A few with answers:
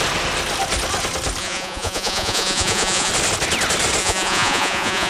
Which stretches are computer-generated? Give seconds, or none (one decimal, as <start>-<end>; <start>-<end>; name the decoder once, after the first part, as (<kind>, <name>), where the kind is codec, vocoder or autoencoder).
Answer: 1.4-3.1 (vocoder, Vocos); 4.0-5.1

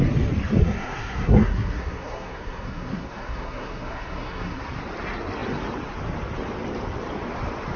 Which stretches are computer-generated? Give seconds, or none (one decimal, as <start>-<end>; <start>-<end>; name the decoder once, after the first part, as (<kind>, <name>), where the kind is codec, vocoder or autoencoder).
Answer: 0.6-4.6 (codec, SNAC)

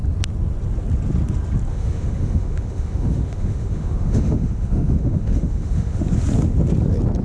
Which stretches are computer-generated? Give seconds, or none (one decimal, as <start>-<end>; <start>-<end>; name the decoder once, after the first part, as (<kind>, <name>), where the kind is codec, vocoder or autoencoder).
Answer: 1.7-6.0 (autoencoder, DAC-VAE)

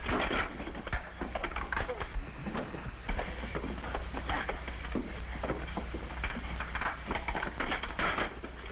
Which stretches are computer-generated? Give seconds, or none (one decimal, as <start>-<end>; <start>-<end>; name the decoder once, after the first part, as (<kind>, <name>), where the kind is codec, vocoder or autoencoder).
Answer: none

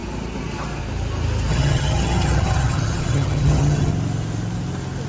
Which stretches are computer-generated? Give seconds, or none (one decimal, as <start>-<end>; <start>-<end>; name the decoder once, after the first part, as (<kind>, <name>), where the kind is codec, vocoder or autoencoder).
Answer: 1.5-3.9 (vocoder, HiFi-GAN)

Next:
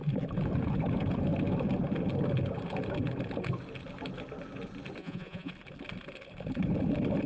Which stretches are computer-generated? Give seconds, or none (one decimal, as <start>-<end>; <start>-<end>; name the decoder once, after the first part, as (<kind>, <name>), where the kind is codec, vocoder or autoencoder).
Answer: 5.0-5.5 (vocoder, Vocos)